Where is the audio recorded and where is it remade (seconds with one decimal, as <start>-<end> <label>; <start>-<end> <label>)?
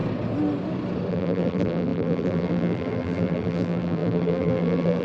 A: 0.0-1.1 recorded; 1.1-5.0 remade